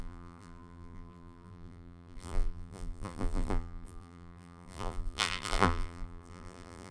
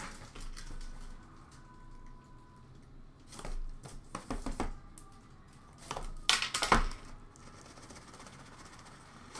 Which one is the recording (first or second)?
second